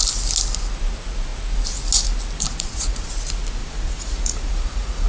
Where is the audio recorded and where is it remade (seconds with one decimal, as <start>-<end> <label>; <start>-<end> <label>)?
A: 0.0-2.5 recorded; 2.5-3.1 remade; 3.1-3.6 recorded; 3.6-5.1 remade